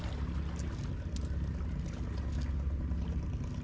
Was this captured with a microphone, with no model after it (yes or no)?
yes